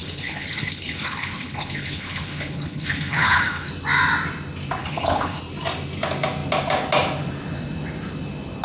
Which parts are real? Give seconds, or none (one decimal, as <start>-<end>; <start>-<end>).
3.7-4.8; 5.4-8.6